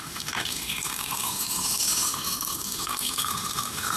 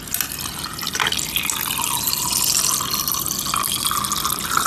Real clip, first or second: second